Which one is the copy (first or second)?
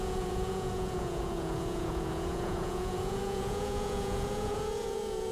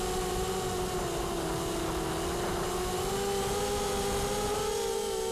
first